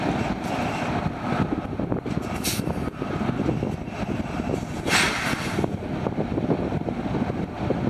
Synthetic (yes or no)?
no